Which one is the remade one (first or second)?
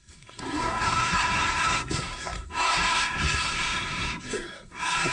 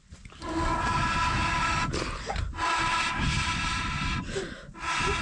first